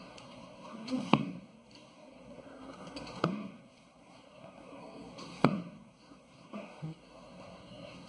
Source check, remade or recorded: remade